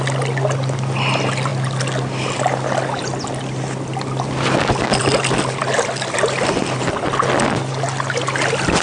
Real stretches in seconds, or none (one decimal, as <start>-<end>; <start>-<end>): 0.0-8.8